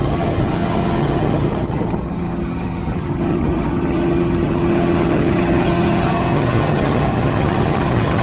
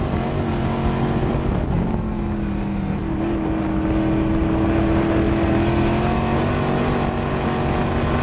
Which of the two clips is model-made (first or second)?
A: first